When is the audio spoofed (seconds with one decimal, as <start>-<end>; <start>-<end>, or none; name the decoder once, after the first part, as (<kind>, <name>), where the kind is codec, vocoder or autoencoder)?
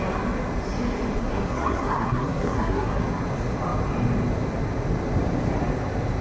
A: 1.2-3.0 (codec, SNAC)